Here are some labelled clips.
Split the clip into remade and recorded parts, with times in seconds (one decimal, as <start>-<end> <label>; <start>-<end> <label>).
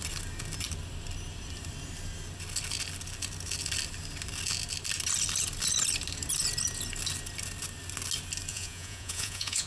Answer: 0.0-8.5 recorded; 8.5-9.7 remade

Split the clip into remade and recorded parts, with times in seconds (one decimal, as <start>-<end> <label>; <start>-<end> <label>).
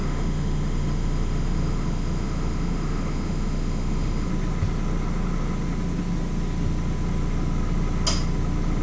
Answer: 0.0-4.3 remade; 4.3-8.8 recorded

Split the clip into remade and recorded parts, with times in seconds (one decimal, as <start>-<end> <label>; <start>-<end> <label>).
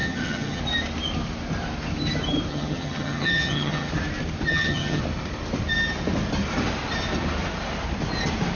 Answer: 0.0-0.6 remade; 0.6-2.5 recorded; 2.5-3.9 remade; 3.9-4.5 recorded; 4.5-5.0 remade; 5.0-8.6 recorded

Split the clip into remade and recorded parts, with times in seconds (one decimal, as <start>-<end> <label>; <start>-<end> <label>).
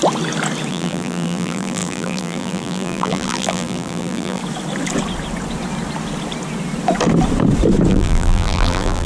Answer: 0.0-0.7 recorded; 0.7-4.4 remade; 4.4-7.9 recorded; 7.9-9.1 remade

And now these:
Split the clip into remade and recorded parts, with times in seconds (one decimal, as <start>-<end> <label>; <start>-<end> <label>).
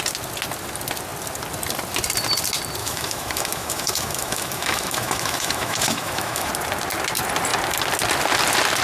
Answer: 0.0-2.8 recorded; 2.8-6.5 remade; 6.5-8.8 recorded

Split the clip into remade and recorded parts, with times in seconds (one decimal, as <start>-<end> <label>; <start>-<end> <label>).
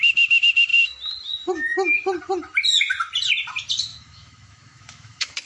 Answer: 0.0-3.9 recorded; 3.9-5.5 remade